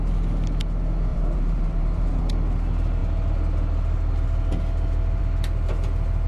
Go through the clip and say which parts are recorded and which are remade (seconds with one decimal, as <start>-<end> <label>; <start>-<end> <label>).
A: 0.0-1.1 recorded; 1.1-2.2 remade; 2.2-6.3 recorded